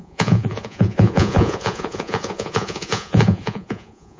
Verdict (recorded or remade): remade